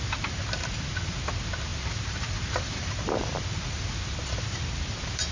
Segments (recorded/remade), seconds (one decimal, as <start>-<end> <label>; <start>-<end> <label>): 0.0-1.7 recorded; 1.7-5.3 remade